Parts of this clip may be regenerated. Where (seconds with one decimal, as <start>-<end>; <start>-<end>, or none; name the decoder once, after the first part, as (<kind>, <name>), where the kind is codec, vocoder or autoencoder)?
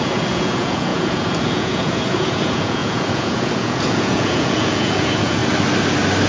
0.0-5.4 (vocoder, Vocos)